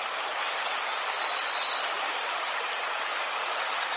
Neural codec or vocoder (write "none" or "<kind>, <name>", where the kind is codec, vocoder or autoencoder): none